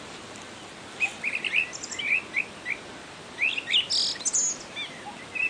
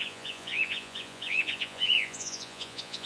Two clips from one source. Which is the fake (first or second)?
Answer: second